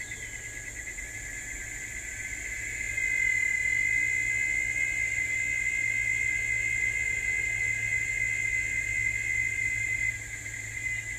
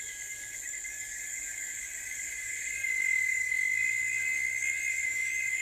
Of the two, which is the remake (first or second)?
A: second